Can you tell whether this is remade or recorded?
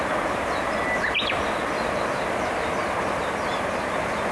recorded